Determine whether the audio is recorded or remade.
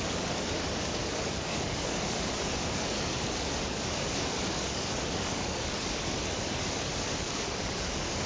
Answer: remade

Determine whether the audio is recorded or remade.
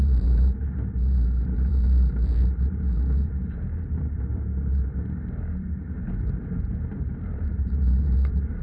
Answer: remade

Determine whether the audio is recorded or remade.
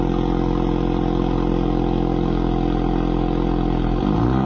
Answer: recorded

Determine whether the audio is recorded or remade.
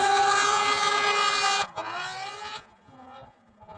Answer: remade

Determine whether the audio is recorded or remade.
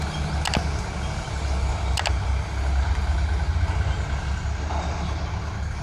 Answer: recorded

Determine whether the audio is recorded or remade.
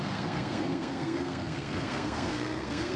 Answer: remade